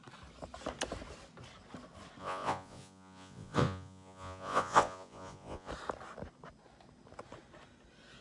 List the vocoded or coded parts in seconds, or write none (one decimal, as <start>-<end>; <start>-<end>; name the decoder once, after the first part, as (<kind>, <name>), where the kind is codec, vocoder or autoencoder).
2.2-5.7 (vocoder, Vocos)